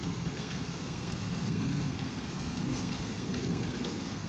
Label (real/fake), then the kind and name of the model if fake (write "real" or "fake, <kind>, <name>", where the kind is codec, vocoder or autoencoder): fake, codec, SNAC